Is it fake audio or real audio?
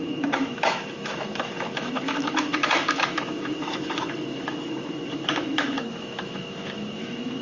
fake